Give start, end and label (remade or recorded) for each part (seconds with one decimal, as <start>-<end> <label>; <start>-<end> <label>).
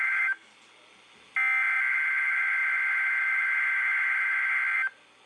0.0-0.5 remade; 0.5-1.9 recorded; 1.9-4.6 remade; 4.6-5.3 recorded